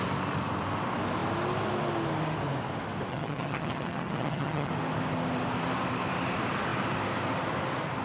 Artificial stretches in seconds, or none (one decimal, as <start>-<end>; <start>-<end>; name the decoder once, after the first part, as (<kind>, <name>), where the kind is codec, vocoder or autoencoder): 3.1-4.7 (vocoder, HiFi-GAN)

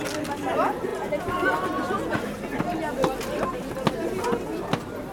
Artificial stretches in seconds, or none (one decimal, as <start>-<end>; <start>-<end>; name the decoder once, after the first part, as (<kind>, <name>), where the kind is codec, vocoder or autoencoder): none

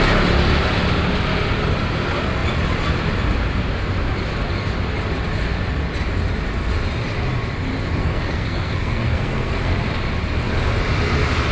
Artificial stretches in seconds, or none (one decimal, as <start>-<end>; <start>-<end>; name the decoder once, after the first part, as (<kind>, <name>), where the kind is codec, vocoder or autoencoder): 8.0-9.7 (codec, SNAC)

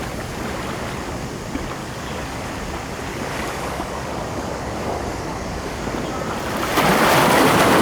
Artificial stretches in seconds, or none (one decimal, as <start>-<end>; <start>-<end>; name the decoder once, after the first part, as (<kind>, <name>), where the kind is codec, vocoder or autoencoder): 1.8-2.5 (codec, DAC); 3.1-5.8

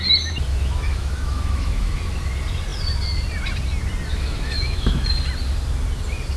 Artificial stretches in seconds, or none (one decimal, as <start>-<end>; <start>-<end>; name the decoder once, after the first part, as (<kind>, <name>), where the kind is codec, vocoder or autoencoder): 0.5-2.0 (autoencoder, DAC-VAE); 4.1-5.1

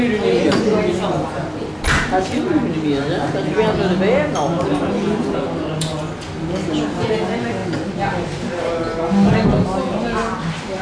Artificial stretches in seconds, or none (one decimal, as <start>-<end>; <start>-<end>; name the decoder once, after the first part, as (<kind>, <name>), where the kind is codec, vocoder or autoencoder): none